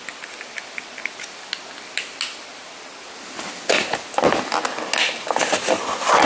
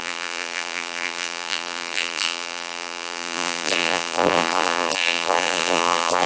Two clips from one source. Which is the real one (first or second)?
first